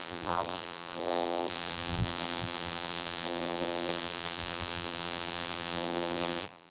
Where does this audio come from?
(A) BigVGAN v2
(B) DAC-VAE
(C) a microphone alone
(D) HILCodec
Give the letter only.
A